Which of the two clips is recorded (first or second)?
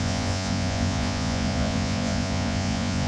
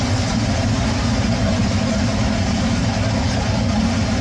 second